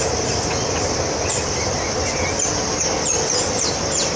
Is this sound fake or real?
real